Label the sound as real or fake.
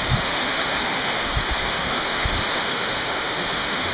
fake